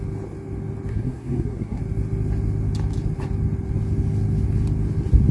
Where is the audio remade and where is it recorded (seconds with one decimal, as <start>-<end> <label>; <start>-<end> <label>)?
0.0-0.9 recorded; 0.9-1.8 remade; 1.8-5.3 recorded